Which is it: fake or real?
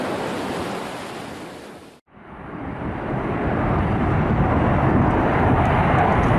real